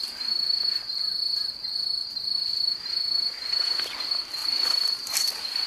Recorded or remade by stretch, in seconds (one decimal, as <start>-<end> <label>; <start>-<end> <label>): 0.0-0.8 remade; 0.8-2.0 recorded; 2.0-2.8 remade; 2.8-4.4 recorded; 4.4-5.7 remade